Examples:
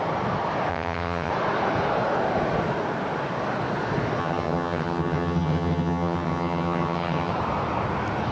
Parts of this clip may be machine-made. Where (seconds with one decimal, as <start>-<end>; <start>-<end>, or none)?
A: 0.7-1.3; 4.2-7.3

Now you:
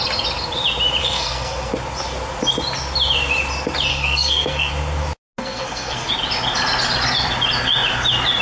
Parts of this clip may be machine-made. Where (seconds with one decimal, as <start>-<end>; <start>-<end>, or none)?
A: 1.0-1.7; 3.9-4.7; 5.4-6.1

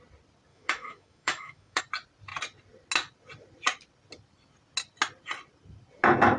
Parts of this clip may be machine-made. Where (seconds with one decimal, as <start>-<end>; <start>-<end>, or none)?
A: 0.5-1.8

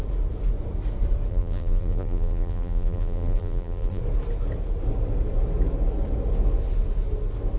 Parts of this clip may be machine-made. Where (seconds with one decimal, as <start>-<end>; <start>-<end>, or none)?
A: 1.3-4.0

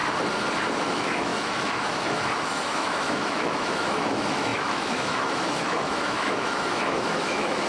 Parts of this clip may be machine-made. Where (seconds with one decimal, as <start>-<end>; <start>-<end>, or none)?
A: 0.9-7.7

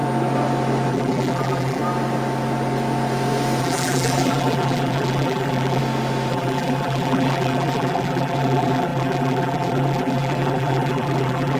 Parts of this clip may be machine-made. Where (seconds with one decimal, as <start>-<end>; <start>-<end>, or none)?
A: 0.9-1.8; 3.6-5.8; 6.3-11.6